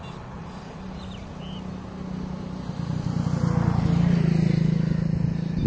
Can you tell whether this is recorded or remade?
recorded